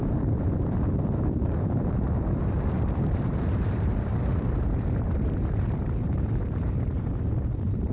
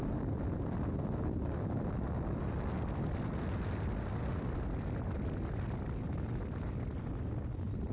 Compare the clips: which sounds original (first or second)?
second